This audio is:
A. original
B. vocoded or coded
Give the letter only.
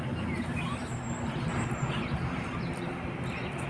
A